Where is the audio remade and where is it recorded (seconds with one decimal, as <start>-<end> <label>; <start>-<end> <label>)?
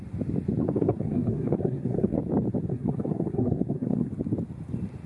0.0-0.6 recorded; 0.6-2.2 remade; 2.2-2.7 recorded; 2.7-4.1 remade; 4.1-5.1 recorded